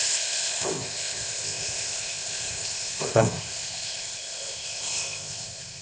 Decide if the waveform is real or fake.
fake